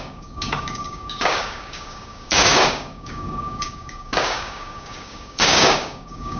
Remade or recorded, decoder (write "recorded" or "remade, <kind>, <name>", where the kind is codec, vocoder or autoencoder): remade, codec, DAC